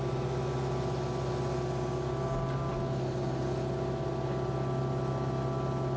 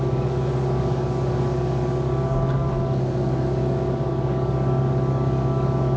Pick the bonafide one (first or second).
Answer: first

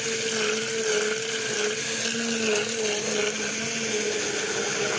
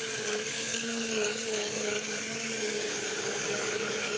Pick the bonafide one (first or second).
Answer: first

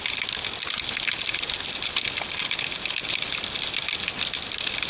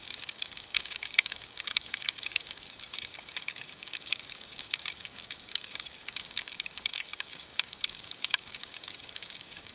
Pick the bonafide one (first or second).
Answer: first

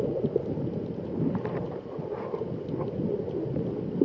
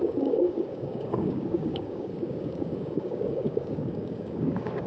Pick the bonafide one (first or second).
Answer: first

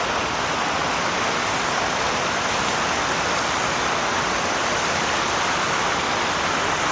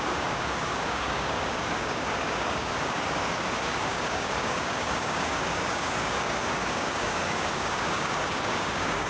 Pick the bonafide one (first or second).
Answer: first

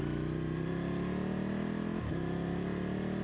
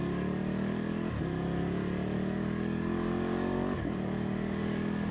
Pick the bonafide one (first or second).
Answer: first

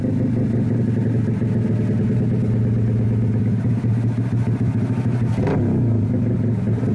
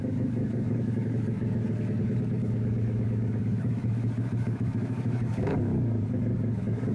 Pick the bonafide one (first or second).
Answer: first